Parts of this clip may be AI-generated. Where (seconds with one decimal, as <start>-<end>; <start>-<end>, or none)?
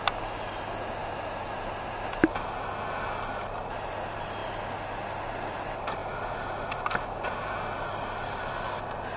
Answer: none